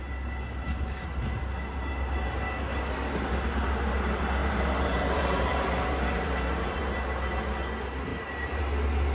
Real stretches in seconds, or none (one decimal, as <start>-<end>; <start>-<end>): 0.0-4.4; 6.8-8.1; 8.6-9.1